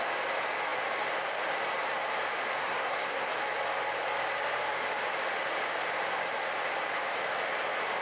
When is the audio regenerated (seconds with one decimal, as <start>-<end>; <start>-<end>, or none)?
2.6-3.3